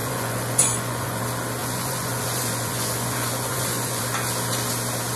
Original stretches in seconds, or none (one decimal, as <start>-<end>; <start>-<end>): 1.2-1.6; 4.0-5.2